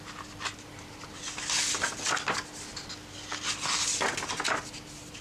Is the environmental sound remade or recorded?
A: recorded